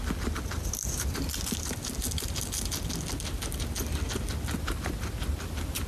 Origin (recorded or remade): recorded